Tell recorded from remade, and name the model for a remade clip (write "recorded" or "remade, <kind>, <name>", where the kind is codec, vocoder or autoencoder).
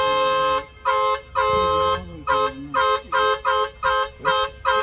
recorded